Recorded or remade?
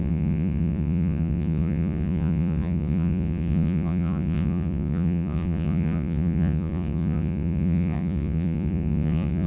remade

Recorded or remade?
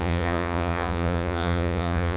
remade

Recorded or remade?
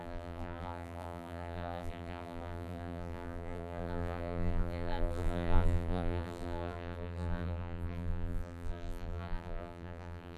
remade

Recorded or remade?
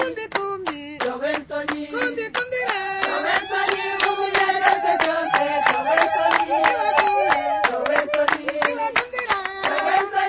recorded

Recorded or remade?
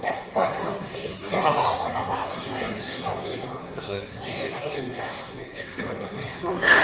remade